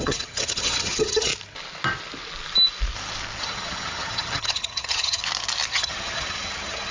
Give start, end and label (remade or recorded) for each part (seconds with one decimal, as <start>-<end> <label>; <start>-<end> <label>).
0.0-1.3 remade; 1.3-3.4 recorded; 3.4-5.2 remade; 5.2-5.7 recorded; 5.7-6.9 remade